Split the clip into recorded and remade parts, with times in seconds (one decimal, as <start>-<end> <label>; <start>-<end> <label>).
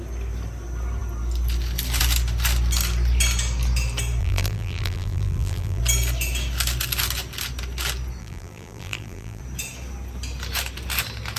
0.0-4.2 recorded; 4.2-5.8 remade; 5.8-8.2 recorded; 8.2-9.4 remade; 9.4-11.4 recorded